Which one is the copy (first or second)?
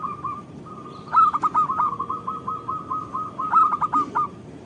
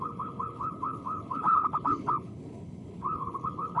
second